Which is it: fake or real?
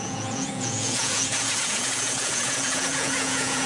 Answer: fake